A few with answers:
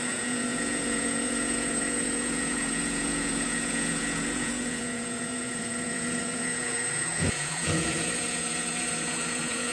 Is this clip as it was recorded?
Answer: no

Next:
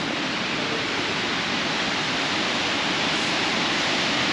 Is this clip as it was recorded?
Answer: yes